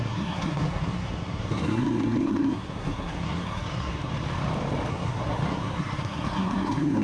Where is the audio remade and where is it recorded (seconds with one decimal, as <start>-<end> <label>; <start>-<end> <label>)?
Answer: 0.0-4.1 remade; 4.1-4.9 recorded; 4.9-7.0 remade